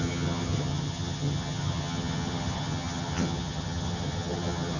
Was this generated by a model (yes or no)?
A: yes